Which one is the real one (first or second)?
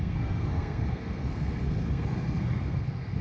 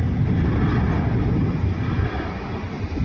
second